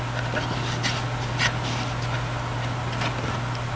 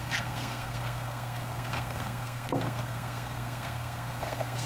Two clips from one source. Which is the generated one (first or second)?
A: second